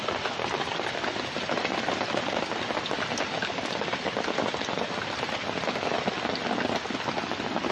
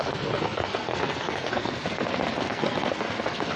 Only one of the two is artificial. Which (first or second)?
second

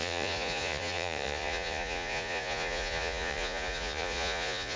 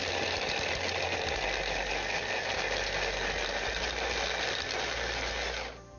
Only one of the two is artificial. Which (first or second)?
first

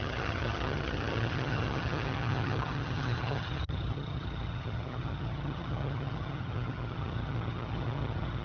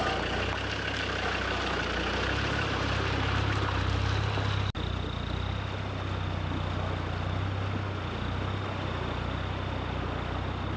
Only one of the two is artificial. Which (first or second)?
first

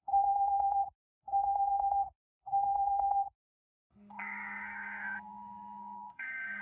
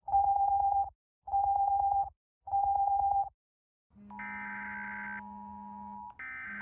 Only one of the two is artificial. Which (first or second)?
first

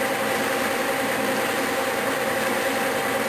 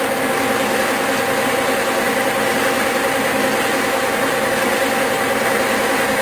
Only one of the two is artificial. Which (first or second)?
first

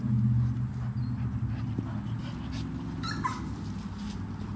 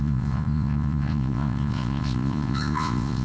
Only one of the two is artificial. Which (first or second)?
second